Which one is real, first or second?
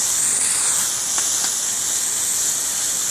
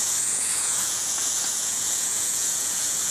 first